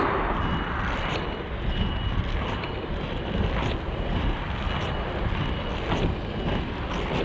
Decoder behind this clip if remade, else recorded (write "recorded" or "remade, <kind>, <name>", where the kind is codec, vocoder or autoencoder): recorded